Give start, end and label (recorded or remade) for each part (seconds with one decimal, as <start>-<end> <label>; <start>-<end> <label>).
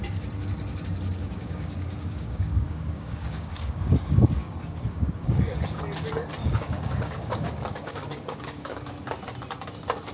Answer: 0.0-1.2 recorded; 1.2-5.8 remade; 5.8-6.4 recorded; 6.4-8.9 remade; 8.9-10.1 recorded